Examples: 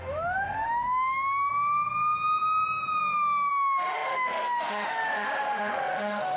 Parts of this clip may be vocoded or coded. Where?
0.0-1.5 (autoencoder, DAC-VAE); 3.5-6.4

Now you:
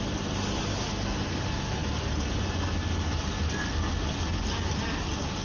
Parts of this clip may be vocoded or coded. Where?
none

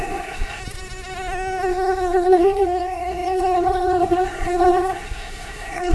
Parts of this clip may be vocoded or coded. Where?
0.0-0.6 (codec, SNAC); 1.7-5.9

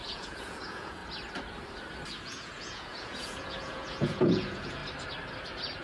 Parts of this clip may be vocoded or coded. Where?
0.0-1.0 (vocoder, Vocos); 2.2-4.8

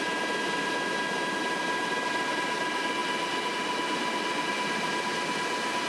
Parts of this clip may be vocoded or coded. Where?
none

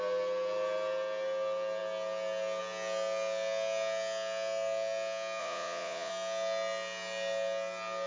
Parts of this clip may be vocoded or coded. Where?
5.4-6.1 (vocoder, Vocos)